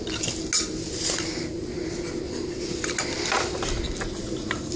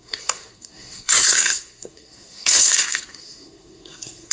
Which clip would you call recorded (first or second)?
first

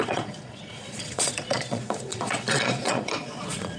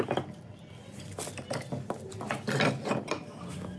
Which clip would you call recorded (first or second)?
second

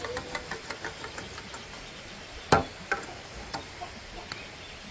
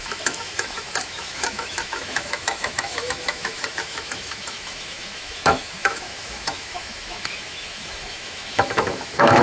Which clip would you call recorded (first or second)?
first